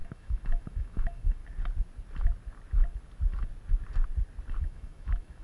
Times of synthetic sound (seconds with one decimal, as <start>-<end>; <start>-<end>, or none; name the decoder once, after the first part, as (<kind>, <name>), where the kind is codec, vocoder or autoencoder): 0.0-1.4 (autoencoder, DAC-VAE); 4.6-5.4